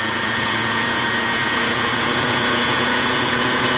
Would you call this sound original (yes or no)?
no